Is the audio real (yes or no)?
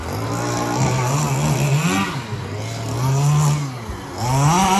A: yes